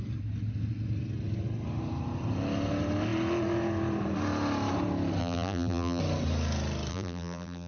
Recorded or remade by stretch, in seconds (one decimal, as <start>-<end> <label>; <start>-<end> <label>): 0.0-5.2 recorded; 5.2-6.0 remade; 6.0-6.9 recorded; 6.9-7.7 remade